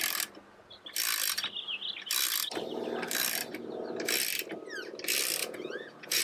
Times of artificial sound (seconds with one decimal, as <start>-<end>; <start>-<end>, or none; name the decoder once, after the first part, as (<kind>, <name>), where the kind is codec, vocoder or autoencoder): 5.4-6.2 (vocoder, Vocos)